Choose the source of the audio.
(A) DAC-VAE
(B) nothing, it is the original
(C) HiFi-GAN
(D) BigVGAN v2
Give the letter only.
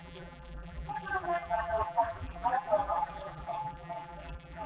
D